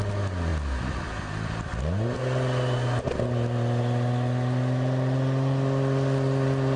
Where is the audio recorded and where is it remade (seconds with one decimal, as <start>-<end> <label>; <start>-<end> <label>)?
0.0-6.8 recorded